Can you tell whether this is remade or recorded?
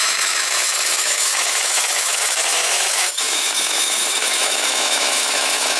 remade